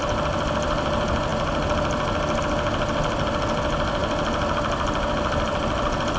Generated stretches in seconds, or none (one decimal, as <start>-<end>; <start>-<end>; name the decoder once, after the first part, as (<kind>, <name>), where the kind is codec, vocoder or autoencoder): none